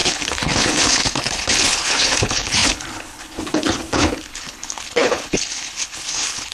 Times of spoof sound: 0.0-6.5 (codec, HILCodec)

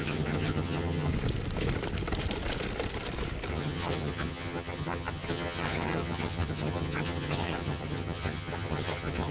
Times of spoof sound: 0.0-1.1 (vocoder, HiFi-GAN); 3.5-9.3

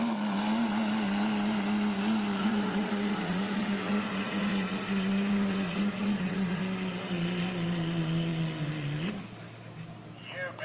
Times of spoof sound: 2.4-6.6 (vocoder, Vocos)

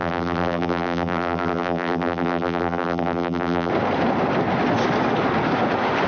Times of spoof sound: 0.0-3.7 (vocoder, BigVGAN v2)

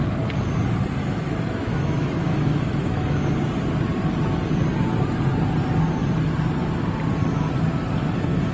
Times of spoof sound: 1.0-3.3 (autoencoder, DAC-VAE)

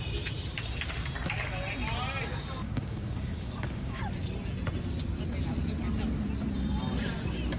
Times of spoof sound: 2.3-4.0 (codec, DAC)